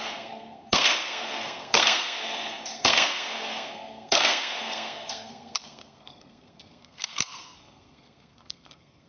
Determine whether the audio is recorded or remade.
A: remade